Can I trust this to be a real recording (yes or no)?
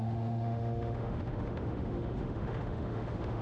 no